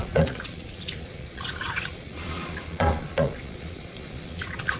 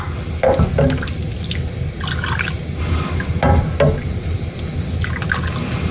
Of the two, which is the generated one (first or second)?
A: first